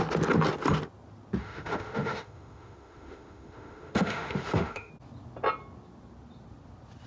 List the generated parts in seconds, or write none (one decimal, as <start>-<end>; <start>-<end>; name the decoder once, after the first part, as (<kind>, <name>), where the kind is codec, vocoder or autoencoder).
1.4-4.9 (autoencoder, DAC-VAE)